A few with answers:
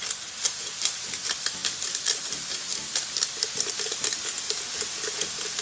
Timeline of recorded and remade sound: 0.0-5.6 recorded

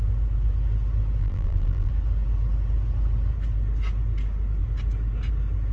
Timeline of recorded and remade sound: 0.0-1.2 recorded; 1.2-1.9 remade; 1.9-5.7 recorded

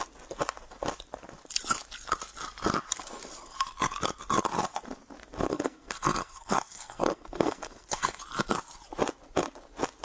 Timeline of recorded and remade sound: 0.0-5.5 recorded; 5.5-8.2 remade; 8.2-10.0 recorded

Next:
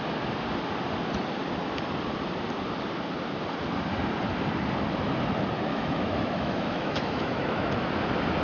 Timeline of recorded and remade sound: 0.0-5.7 recorded; 5.7-7.9 remade; 7.9-8.4 recorded